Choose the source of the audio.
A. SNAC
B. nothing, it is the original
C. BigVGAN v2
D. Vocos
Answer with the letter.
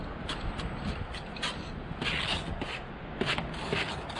B